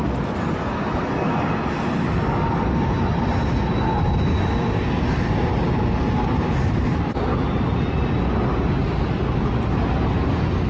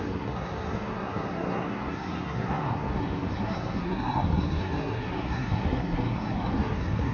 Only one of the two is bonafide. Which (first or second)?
first